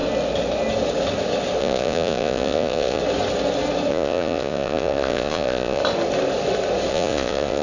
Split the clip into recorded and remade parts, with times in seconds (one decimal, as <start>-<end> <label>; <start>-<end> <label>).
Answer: 0.0-1.6 recorded; 1.6-3.0 remade; 3.0-3.9 recorded; 3.9-5.8 remade; 5.8-6.9 recorded; 6.9-7.6 remade